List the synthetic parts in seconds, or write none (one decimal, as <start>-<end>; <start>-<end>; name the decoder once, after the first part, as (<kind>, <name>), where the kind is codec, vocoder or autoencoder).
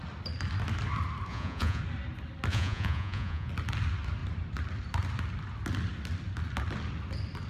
1.3-1.8 (vocoder, Vocos); 2.5-3.5